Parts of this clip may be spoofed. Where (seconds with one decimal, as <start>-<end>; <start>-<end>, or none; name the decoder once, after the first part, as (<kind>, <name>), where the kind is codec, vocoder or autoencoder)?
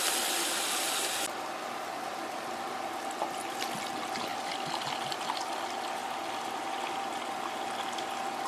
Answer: 4.3-5.3 (vocoder, BigVGAN v2)